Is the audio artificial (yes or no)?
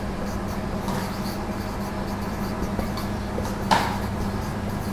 no